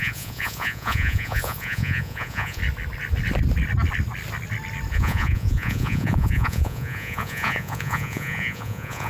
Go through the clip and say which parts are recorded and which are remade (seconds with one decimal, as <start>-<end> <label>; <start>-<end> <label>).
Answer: 0.0-2.6 remade; 2.6-4.9 recorded; 4.9-9.1 remade